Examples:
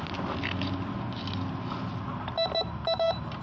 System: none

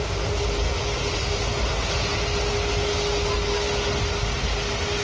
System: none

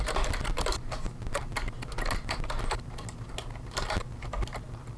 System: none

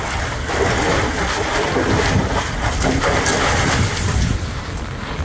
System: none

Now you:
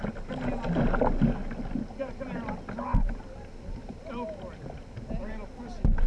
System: none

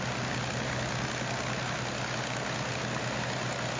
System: none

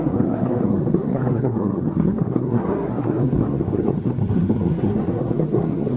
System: codec, SNAC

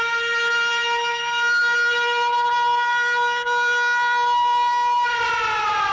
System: none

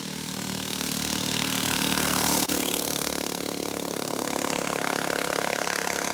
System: codec, SNAC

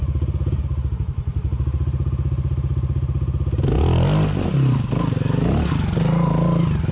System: none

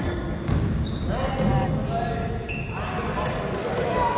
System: none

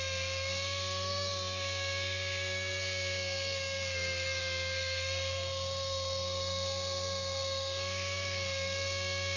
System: codec, SNAC